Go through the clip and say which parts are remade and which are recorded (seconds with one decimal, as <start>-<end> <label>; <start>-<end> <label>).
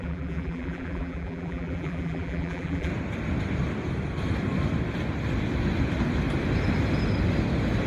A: 0.0-2.9 remade; 2.9-7.9 recorded